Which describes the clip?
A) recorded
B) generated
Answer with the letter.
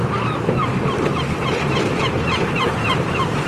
B